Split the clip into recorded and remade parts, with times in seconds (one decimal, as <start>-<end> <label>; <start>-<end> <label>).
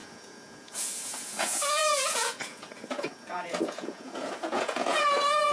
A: 0.0-5.5 remade